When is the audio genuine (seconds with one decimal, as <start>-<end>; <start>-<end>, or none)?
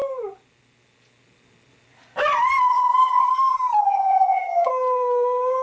0.0-2.7; 3.3-3.8; 4.7-5.6